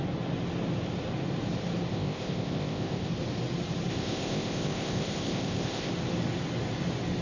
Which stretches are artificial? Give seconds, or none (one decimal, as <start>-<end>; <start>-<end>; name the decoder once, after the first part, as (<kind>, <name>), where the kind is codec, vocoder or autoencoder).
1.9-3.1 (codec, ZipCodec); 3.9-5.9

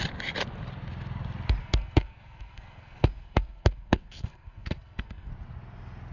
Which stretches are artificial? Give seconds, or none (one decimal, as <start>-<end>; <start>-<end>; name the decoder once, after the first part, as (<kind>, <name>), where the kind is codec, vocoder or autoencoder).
1.6-5.3 (codec, SNAC)

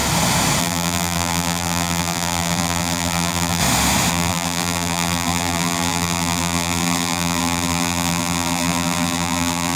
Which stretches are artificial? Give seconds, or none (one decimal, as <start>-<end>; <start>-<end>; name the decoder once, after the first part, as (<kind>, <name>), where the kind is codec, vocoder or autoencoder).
0.6-3.6 (vocoder, BigVGAN v2); 4.1-9.8